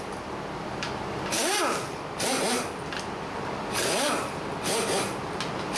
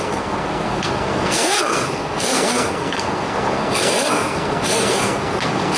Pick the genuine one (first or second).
first